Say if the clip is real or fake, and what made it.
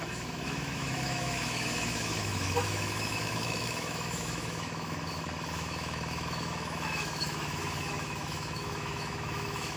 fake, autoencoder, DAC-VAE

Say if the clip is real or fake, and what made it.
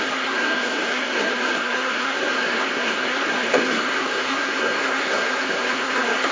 fake, codec, SNAC